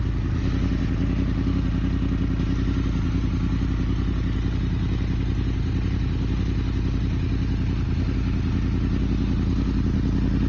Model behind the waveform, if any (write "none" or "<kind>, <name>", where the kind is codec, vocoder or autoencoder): none